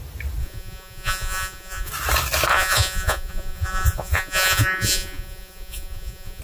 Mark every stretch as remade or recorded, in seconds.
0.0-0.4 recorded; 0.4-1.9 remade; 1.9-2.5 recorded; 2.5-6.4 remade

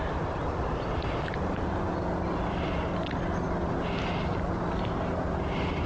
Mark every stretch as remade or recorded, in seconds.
0.0-5.9 recorded